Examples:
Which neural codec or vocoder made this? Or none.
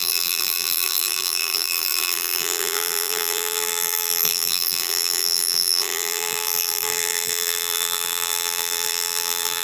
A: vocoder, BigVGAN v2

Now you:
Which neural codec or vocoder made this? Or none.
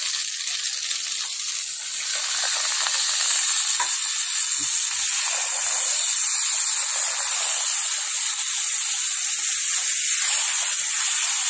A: none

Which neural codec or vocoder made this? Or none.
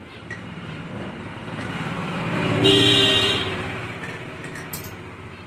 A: vocoder, BigVGAN v2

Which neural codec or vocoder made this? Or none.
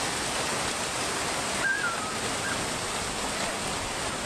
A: vocoder, BigVGAN v2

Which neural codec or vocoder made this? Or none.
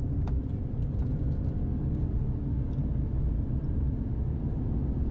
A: none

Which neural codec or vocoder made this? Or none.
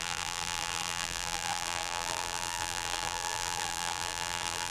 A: vocoder, BigVGAN v2